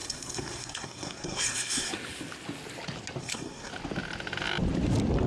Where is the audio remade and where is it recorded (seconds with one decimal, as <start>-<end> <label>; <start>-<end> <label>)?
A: 0.0-1.9 remade; 1.9-3.2 recorded; 3.2-3.7 remade; 3.7-5.3 recorded